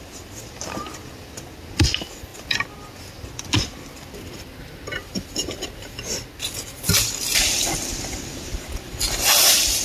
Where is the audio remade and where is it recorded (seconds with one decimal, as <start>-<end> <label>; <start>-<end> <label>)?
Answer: 0.0-9.8 recorded